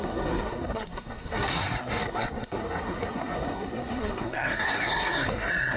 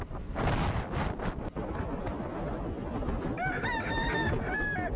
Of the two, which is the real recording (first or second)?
second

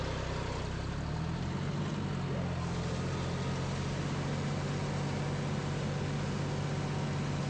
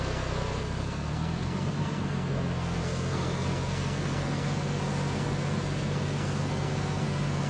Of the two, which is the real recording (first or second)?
first